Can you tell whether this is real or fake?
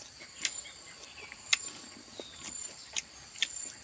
real